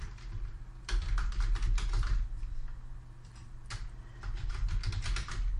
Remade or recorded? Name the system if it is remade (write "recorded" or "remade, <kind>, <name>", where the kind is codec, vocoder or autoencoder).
remade, vocoder, BigVGAN v2